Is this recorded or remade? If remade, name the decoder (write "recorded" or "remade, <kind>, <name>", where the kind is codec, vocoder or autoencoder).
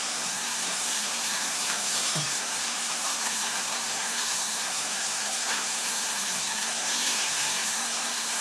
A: remade, codec, SNAC